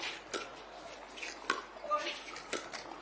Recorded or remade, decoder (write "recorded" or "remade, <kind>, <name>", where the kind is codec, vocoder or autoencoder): recorded